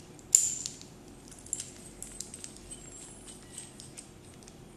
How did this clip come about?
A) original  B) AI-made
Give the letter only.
A